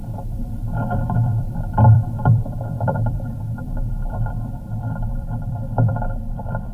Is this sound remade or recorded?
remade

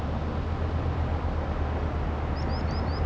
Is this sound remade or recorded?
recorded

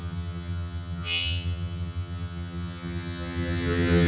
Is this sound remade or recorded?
remade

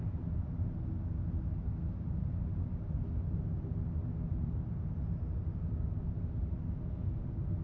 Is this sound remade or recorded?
recorded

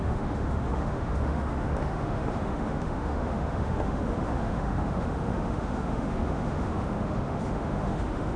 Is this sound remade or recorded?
remade